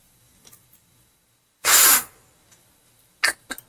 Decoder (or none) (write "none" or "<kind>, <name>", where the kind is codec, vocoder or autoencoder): none